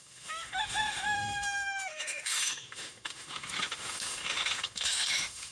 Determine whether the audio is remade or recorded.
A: remade